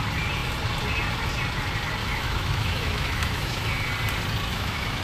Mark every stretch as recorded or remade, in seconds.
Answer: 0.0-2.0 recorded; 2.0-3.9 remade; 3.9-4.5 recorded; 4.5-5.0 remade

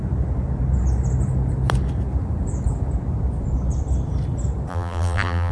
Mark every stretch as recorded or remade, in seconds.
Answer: 0.0-4.7 recorded; 4.7-5.5 remade

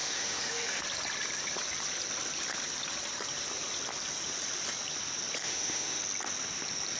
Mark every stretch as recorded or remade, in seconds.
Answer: 0.0-0.8 remade; 0.8-5.4 recorded; 5.4-6.0 remade; 6.0-7.0 recorded

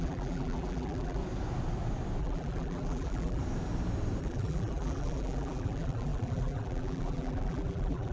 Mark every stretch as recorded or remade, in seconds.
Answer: 0.0-1.2 remade; 1.2-2.2 recorded; 2.2-3.4 remade; 3.4-4.2 recorded; 4.2-8.1 remade

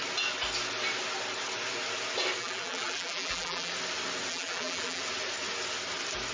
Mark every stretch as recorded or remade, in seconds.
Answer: 0.0-2.4 recorded; 2.4-3.7 remade; 3.7-4.3 recorded; 4.3-5.0 remade; 5.0-6.3 recorded